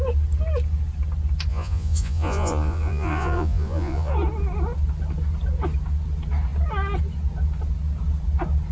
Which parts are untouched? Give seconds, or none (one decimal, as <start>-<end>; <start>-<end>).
0.0-1.5; 4.1-8.7